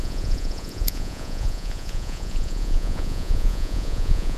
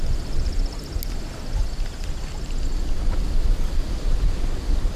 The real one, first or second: second